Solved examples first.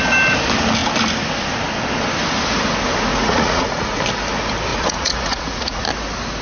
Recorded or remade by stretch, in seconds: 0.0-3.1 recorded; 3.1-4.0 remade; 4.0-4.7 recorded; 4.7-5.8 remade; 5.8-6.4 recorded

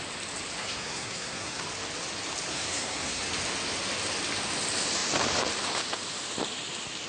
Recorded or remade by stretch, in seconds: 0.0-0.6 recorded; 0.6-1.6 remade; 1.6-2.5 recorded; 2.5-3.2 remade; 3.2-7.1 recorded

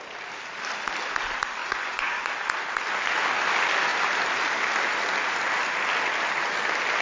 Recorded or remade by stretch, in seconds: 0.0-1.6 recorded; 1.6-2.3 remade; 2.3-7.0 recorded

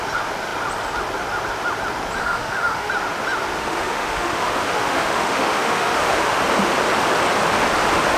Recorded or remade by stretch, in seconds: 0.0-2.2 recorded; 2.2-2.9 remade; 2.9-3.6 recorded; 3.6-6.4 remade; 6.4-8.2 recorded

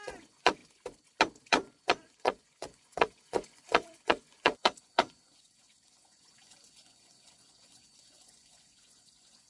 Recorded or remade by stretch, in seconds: 0.0-0.6 remade; 0.6-1.5 recorded; 1.5-9.5 remade

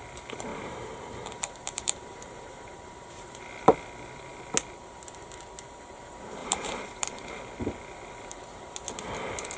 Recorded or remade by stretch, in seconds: 0.0-0.5 recorded; 0.5-3.4 remade; 3.4-6.4 recorded; 6.4-7.4 remade; 7.4-9.6 recorded

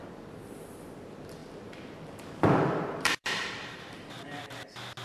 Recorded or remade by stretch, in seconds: 0.0-1.4 recorded; 1.4-4.4 remade; 4.4-5.0 recorded

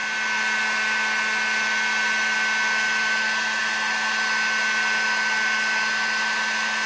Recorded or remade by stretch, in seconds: 0.0-6.9 recorded